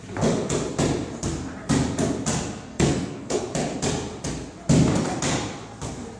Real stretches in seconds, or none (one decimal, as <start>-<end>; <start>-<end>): 0.0-2.7; 3.4-6.2